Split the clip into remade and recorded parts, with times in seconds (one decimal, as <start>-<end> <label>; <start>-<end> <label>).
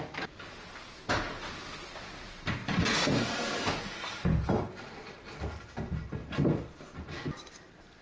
0.0-2.6 recorded; 2.6-5.6 remade; 5.6-8.0 recorded